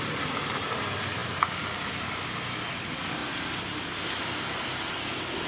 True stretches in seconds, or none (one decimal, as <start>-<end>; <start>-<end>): 0.0-3.2; 4.2-5.5